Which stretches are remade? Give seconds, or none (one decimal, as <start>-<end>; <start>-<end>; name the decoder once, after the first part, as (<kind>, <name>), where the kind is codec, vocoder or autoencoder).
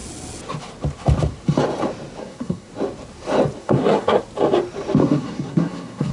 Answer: 2.2-2.7 (codec, SNAC); 3.6-4.2; 5.0-6.1